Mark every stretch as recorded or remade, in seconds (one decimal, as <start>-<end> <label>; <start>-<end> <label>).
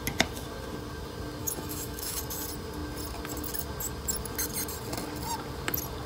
0.0-1.4 recorded; 1.4-2.2 remade; 2.2-6.1 recorded